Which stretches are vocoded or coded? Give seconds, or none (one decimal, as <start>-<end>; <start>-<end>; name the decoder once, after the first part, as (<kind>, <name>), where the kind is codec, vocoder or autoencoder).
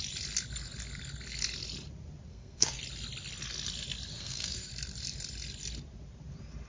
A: 2.3-2.8 (codec, SNAC); 4.1-4.7